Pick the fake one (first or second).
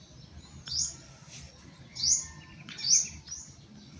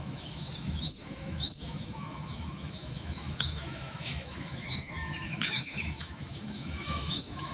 second